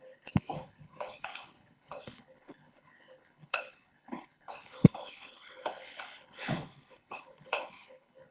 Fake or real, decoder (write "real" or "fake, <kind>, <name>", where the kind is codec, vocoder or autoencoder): fake, codec, HILCodec